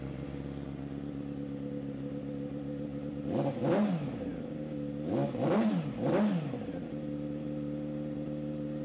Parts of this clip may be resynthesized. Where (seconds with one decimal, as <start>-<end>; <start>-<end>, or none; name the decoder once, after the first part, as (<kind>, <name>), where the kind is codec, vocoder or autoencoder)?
none